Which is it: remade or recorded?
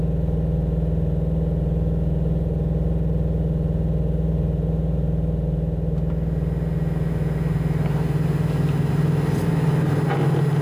recorded